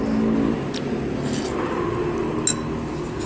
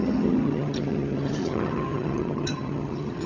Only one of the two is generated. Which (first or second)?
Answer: second